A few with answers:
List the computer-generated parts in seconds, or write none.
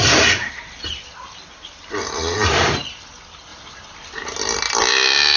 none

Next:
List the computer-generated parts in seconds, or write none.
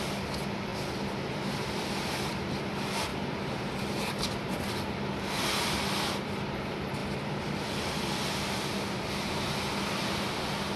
none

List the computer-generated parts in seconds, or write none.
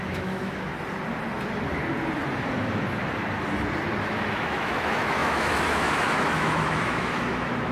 0.0-0.7 (autoencoder, DAC-VAE); 4.0-7.7